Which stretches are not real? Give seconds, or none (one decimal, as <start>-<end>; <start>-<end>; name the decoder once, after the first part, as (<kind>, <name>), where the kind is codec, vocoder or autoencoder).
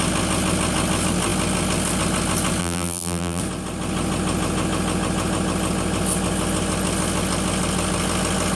2.6-3.4 (vocoder, BigVGAN v2)